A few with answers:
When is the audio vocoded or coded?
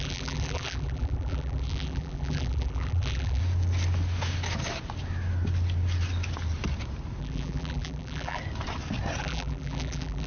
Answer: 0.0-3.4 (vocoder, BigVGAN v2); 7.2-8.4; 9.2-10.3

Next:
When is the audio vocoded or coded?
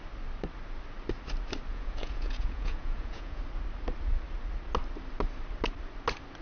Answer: 1.7-3.4 (vocoder, Vocos)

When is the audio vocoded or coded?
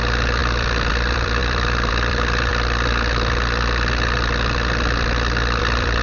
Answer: 0.0-2.5 (vocoder, BigVGAN v2); 5.6-6.0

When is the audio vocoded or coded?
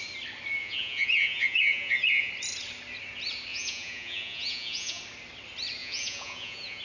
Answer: 0.6-2.3 (vocoder, Vocos); 3.5-5.0; 5.8-6.8